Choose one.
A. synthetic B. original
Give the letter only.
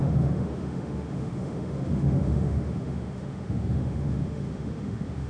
A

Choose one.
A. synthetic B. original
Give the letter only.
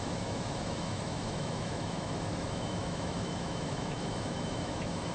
A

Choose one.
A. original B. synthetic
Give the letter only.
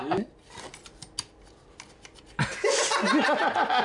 A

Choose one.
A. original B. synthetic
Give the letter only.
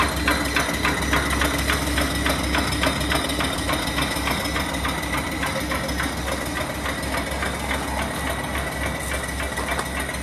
A